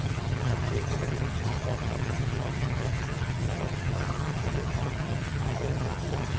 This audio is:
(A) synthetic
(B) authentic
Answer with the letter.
A